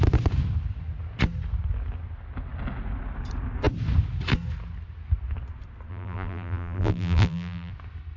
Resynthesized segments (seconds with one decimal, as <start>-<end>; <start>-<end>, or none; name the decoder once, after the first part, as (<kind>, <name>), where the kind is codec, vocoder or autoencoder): 5.9-7.7 (vocoder, BigVGAN v2)